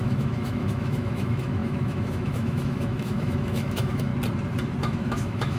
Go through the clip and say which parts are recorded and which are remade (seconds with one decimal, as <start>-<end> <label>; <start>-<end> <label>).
0.0-4.1 remade; 4.1-4.8 recorded; 4.8-5.6 remade